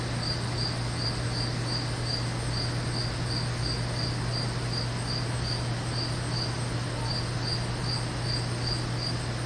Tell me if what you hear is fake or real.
real